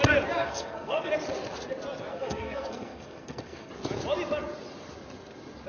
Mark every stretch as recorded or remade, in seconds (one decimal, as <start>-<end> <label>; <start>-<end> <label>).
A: 0.0-0.4 recorded; 0.4-1.1 remade; 1.1-2.1 recorded; 2.1-3.7 remade; 3.7-5.7 recorded